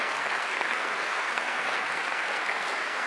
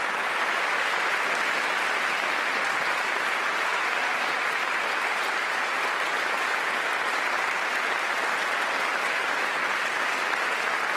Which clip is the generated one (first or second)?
first